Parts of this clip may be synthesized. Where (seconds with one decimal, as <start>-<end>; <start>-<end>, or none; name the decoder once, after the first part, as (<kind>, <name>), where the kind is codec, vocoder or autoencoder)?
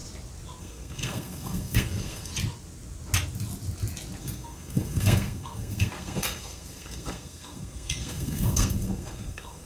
0.6-2.3 (codec, SNAC); 4.2-9.7